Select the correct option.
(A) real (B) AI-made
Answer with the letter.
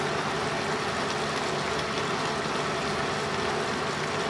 A